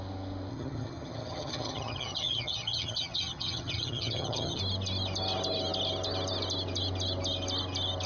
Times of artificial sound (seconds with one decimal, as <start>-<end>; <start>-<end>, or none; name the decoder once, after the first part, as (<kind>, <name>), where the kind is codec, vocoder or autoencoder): 0.5-4.6 (vocoder, HiFi-GAN)

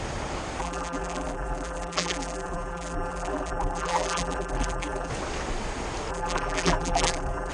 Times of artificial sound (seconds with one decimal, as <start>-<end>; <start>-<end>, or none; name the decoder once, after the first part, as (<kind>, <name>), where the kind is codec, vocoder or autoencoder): 0.6-5.1 (vocoder, BigVGAN v2); 6.1-7.5

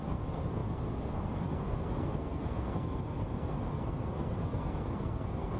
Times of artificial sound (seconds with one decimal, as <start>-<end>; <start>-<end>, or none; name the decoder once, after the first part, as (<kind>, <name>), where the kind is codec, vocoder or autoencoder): 0.0-5.6 (codec, SNAC)